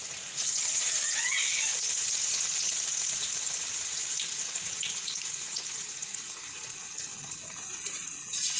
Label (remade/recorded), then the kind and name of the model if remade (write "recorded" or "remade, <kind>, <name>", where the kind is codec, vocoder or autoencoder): remade, vocoder, Vocos